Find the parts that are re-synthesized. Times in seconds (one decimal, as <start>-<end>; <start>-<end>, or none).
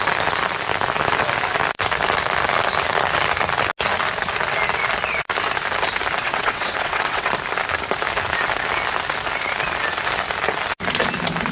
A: 6.2-7.3